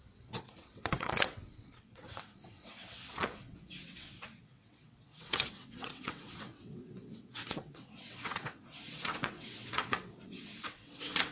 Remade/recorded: remade